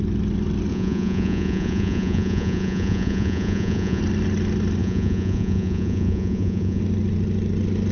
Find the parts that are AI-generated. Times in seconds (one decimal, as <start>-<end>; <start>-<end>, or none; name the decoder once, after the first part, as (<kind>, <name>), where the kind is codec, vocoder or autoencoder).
0.7-4.0 (vocoder, Vocos); 4.8-6.8